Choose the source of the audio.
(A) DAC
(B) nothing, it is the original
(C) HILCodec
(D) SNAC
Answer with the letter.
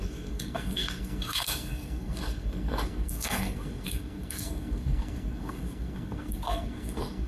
D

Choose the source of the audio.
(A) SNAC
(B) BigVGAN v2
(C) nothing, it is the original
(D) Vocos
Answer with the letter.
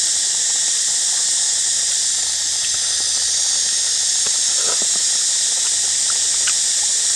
C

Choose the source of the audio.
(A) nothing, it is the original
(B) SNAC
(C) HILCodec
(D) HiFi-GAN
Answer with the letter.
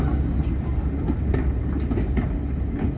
A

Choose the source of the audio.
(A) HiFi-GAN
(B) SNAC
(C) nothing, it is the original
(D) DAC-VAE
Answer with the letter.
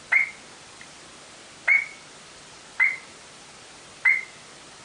C